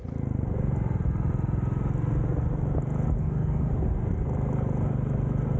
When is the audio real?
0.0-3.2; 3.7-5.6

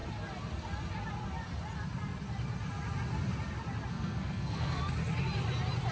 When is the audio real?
0.0-3.9; 4.8-5.9